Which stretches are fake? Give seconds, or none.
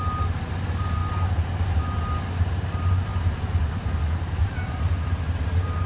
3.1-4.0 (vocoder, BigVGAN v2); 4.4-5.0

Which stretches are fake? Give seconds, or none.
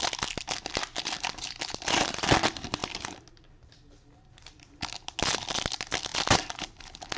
none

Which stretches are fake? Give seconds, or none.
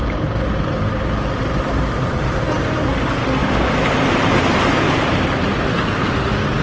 0.0-2.9 (vocoder, BigVGAN v2); 3.4-4.6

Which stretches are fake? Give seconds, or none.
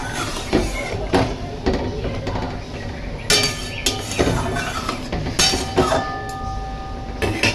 0.0-1.5 (vocoder, BigVGAN v2)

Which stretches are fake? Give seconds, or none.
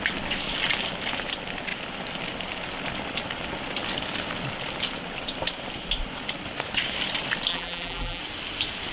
7.5-8.2 (vocoder, BigVGAN v2)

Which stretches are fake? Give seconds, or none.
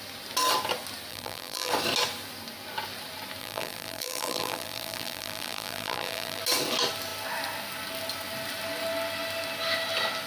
1.1-1.7 (vocoder, BigVGAN v2); 3.4-6.4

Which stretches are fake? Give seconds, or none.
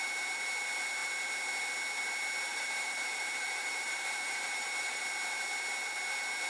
2.5-5.0 (vocoder, BigVGAN v2)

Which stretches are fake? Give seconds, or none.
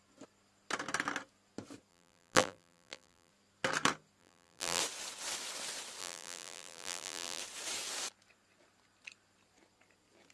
1.9-3.3 (vocoder, BigVGAN v2); 4.2-4.8; 6.0-7.4